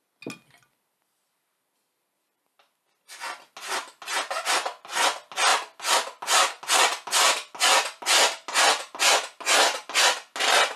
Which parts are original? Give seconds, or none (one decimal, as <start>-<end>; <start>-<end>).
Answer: 0.0-10.8